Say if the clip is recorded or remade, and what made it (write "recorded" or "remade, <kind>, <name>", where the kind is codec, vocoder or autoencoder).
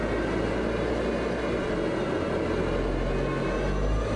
recorded